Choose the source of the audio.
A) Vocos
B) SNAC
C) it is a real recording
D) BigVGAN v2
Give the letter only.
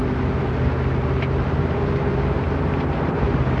C